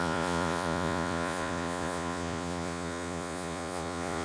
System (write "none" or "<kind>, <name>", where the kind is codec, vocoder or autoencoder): vocoder, Vocos